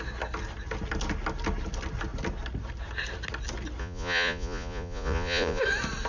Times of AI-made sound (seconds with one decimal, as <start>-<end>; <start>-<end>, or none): 3.8-5.6